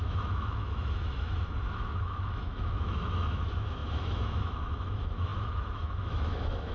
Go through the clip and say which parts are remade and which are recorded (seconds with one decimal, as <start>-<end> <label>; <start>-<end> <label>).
0.0-6.7 remade